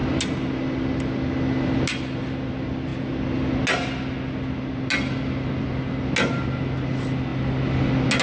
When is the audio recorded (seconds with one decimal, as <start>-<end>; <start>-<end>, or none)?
0.0-8.2